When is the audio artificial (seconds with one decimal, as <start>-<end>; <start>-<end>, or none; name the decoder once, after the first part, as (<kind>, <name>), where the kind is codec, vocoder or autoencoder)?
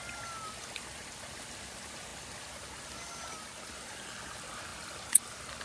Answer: none